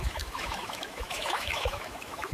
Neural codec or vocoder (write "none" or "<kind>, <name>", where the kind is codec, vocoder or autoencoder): autoencoder, DAC-VAE